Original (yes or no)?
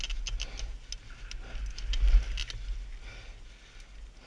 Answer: yes